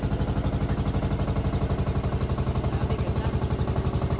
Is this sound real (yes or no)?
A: yes